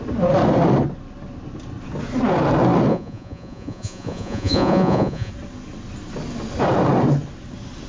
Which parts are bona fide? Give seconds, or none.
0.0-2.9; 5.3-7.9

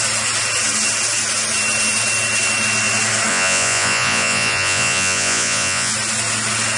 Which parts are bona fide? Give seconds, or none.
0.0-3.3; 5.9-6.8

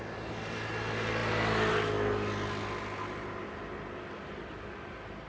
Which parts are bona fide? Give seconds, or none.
0.0-5.3

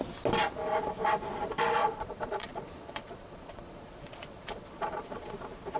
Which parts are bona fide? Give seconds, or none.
0.0-1.8; 5.3-5.8

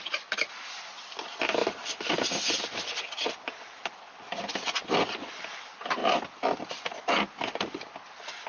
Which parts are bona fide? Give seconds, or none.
0.0-8.5